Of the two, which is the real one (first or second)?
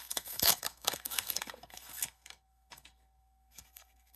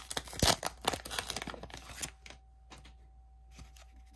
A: second